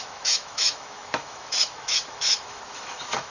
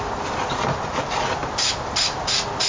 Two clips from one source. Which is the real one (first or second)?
second